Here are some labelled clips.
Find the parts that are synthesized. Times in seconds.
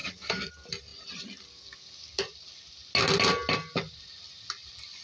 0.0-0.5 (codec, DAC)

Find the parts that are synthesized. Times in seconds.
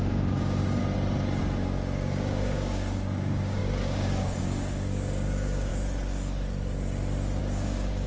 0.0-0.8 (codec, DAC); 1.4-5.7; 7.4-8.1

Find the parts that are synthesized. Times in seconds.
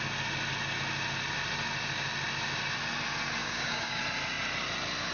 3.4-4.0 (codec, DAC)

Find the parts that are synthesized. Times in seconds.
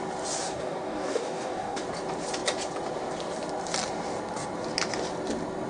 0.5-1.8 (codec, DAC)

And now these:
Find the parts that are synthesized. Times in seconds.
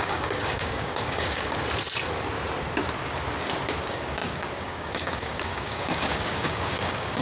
0.0-1.6 (codec, DAC); 3.8-7.2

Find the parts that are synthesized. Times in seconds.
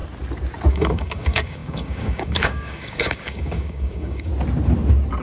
0.7-4.3 (codec, DAC)